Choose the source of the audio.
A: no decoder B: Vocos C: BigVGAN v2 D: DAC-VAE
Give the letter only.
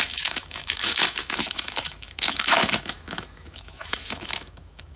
D